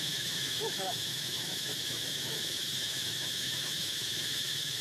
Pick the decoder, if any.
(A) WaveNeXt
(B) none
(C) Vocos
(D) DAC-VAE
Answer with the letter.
D